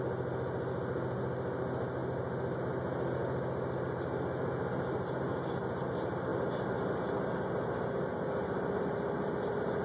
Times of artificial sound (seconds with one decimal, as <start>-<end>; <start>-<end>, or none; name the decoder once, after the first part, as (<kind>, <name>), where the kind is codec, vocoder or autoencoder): none